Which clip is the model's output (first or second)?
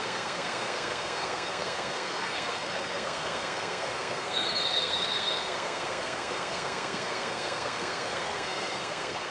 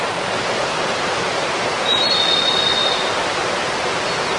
first